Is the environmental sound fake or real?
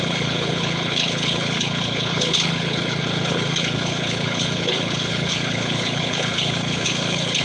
fake